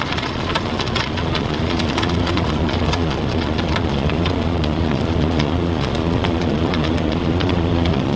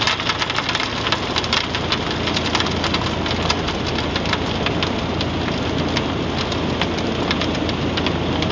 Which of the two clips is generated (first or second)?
first